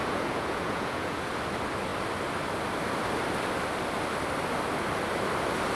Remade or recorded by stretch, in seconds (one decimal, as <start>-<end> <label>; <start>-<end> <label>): 0.0-1.3 remade; 1.3-5.8 recorded